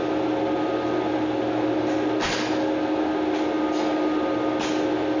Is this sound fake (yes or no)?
no